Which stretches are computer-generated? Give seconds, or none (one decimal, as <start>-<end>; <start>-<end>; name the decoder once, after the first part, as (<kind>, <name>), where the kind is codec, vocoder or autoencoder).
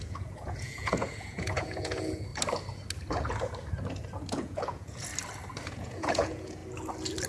0.0-2.3 (vocoder, Vocos); 4.3-5.1; 5.7-6.6